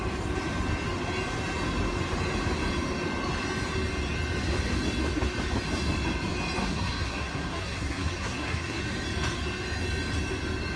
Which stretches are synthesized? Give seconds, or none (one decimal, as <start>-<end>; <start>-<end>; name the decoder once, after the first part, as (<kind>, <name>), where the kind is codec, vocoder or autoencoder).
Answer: 6.6-8.8 (codec, SNAC)